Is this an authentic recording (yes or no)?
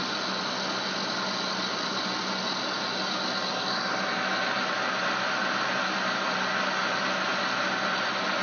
yes